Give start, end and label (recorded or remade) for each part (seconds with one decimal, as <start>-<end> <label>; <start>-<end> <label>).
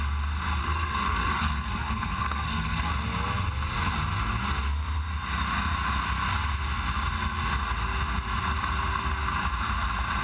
0.0-0.6 recorded; 0.6-2.9 remade; 2.9-10.2 recorded